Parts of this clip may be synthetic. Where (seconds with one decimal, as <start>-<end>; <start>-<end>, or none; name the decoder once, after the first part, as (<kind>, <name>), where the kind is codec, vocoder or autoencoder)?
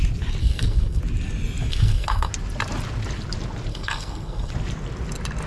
0.4-1.0 (codec, SNAC); 1.7-2.3; 3.7-4.5